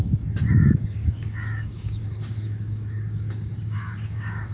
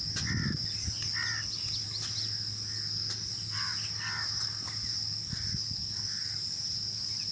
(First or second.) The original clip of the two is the second